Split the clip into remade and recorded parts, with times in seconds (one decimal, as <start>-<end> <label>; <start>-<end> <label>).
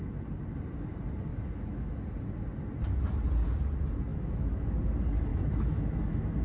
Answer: 0.0-1.3 recorded; 1.3-2.0 remade; 2.0-4.1 recorded; 4.1-4.8 remade; 4.8-5.3 recorded; 5.3-6.4 remade